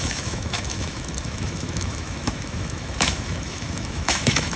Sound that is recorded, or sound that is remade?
remade